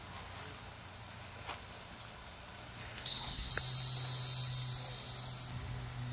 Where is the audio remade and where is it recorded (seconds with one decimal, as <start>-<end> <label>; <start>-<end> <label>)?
0.0-2.8 recorded; 2.8-3.5 remade; 3.5-6.1 recorded